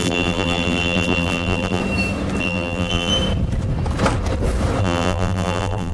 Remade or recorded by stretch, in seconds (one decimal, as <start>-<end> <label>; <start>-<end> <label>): 0.0-1.8 remade; 1.8-2.4 recorded; 2.4-3.1 remade; 3.1-4.8 recorded; 4.8-5.9 remade